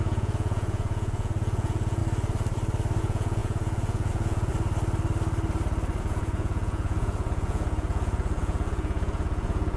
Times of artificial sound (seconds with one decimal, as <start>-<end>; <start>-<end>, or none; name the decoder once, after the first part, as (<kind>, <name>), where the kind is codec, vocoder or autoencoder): 0.0-2.0 (vocoder, Vocos); 3.0-4.5; 6.0-9.8